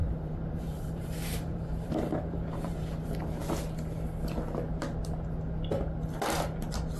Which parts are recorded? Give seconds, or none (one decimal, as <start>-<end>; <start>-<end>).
3.1-7.0